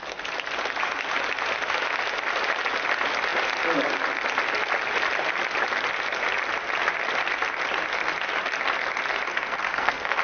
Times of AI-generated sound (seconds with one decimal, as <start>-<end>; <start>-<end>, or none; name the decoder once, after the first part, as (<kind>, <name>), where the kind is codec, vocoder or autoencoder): 9.3-10.2 (codec, SNAC)